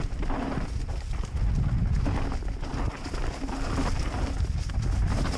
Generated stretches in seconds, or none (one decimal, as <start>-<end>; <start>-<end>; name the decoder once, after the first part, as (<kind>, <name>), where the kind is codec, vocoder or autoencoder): none